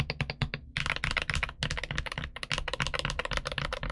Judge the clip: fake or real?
real